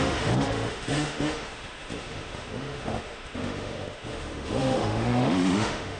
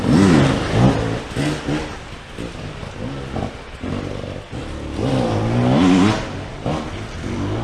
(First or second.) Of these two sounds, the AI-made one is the first